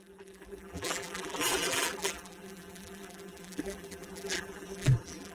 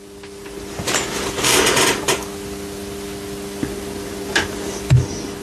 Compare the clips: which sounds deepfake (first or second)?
first